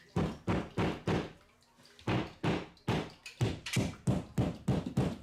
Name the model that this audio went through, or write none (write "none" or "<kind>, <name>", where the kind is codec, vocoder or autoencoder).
none